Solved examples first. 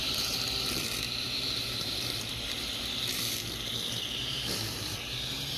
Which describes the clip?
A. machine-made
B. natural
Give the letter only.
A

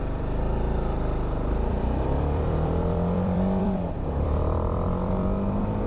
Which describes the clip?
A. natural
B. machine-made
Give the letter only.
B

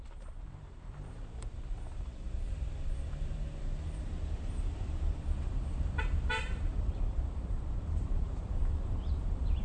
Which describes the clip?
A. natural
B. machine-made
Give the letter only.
B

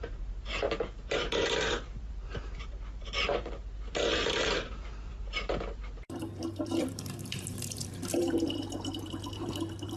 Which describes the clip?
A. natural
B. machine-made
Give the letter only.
B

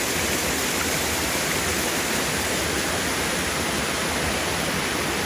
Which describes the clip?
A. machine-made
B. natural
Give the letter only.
A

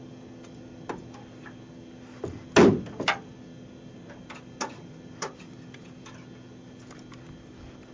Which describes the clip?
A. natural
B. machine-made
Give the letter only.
A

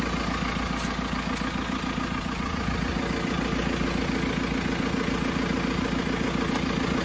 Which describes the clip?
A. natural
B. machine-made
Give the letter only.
A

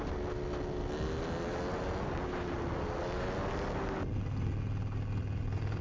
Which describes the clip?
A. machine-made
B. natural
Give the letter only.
B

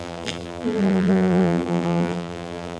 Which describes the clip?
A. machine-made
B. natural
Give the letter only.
A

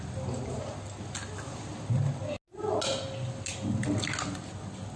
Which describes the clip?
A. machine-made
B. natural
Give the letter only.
B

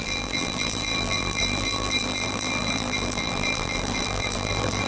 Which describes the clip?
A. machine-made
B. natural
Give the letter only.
A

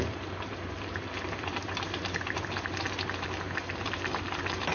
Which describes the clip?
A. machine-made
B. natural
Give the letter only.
A